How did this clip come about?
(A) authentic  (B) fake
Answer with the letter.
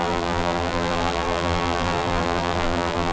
B